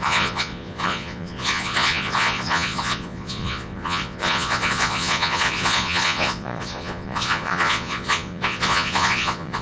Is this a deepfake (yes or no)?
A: yes